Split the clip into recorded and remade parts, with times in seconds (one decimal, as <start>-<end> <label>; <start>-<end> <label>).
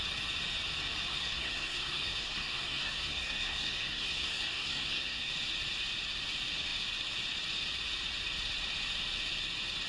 0.0-1.1 recorded; 1.1-5.3 remade; 5.3-9.9 recorded